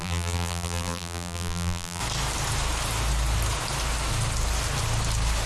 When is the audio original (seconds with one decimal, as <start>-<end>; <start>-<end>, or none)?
2.0-5.5